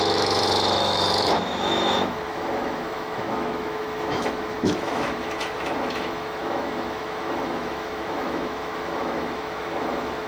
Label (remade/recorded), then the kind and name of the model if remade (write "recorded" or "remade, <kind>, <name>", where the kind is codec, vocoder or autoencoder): remade, autoencoder, DAC-VAE